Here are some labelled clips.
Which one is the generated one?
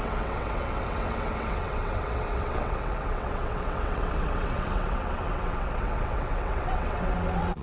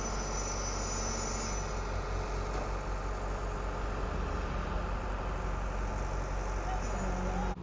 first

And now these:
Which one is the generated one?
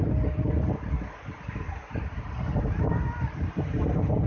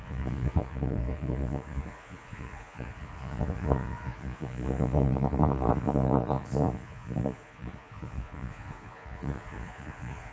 second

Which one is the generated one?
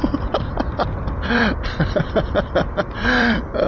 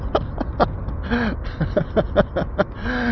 first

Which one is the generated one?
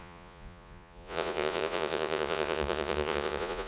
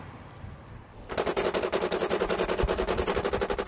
first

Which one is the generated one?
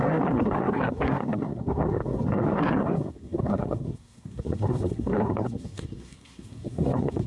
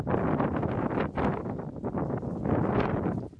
first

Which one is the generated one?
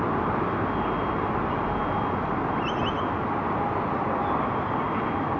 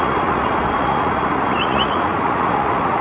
second